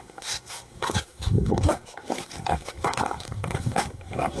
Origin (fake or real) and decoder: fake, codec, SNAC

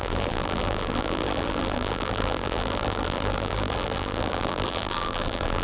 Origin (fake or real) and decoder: fake, vocoder, BigVGAN v2